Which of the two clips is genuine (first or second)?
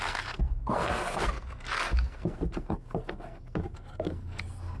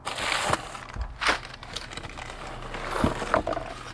second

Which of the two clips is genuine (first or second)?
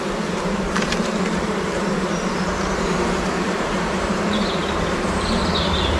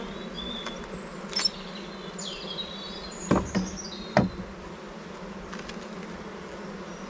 second